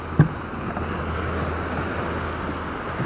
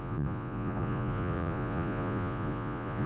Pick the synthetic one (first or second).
second